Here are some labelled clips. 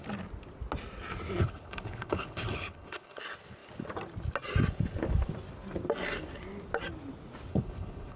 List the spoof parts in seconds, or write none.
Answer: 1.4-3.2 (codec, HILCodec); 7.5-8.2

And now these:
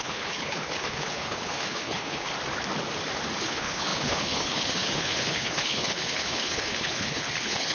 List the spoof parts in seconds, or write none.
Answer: 0.0-2.3 (codec, HILCodec); 3.4-7.7